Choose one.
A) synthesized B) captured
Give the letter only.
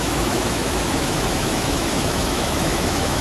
A